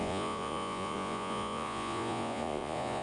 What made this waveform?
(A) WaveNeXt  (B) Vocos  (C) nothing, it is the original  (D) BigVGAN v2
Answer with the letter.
B